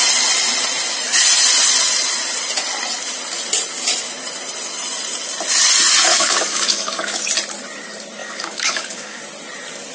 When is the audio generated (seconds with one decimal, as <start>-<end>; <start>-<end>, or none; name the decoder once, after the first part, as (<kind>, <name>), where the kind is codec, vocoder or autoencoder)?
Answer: 6.1-7.2 (codec, DAC); 8.2-9.2

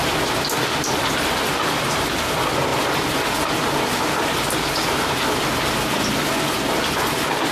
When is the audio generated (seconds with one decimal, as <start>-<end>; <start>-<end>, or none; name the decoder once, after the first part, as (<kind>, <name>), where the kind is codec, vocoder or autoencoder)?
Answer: none

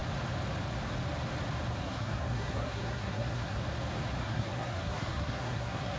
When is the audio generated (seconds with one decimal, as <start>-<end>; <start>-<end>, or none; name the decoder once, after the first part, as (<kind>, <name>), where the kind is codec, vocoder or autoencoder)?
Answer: 1.8-3.6 (codec, SNAC); 4.2-6.0

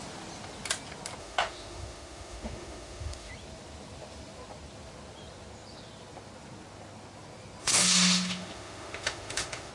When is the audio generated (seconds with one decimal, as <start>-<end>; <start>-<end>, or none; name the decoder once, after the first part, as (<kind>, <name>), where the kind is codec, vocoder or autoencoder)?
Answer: 1.2-3.3 (autoencoder, DAC-VAE); 7.6-9.7

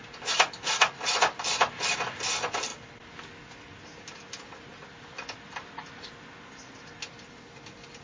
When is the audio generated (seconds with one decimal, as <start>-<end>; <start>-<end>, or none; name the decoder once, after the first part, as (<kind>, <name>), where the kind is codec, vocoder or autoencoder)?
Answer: none

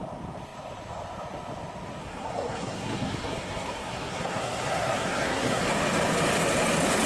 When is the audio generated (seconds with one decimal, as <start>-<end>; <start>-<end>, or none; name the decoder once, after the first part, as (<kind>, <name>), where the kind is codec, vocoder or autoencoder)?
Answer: 2.0-5.6 (codec, SNAC)

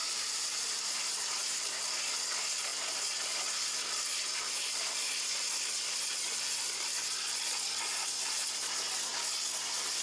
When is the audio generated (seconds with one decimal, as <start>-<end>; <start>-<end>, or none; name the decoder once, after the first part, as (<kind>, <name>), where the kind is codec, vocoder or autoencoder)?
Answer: 0.0-1.6 (vocoder, BigVGAN v2)

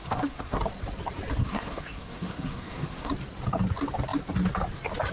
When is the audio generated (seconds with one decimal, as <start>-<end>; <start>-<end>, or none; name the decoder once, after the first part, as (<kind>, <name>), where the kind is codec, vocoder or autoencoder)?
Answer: 0.0-0.6 (codec, SNAC); 1.4-3.1